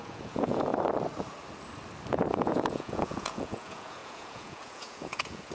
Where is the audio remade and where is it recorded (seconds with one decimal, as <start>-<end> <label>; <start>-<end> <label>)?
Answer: 0.0-0.7 remade; 0.7-2.2 recorded; 2.2-5.5 remade